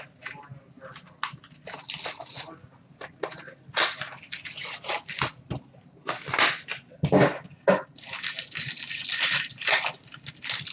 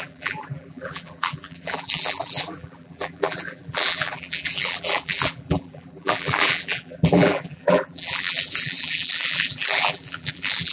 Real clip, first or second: first